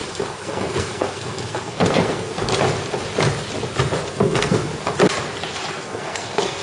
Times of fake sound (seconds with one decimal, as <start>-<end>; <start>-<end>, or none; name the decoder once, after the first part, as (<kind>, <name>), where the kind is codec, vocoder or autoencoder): 0.0-2.5 (codec, SNAC); 4.1-4.7; 5.7-6.6